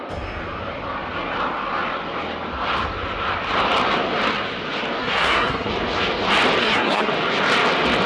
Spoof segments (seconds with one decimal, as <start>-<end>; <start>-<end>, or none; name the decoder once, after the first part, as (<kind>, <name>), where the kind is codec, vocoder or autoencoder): 5.0-5.7 (codec, SNAC); 6.6-7.1